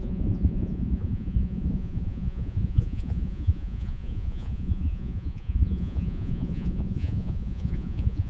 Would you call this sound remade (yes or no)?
yes